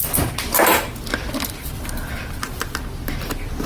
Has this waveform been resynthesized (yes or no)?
no